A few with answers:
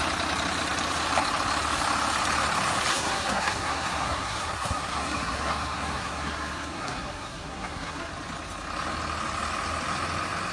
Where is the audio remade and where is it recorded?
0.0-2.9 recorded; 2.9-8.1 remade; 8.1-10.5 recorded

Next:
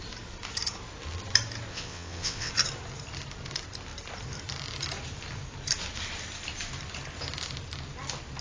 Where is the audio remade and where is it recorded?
0.0-1.7 recorded; 1.7-2.5 remade; 2.5-8.4 recorded

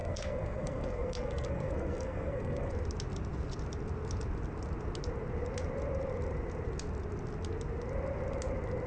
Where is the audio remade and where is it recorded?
0.0-2.7 remade; 2.7-8.9 recorded

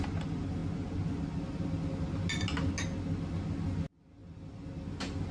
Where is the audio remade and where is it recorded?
0.0-5.3 recorded